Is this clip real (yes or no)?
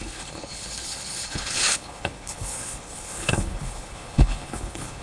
no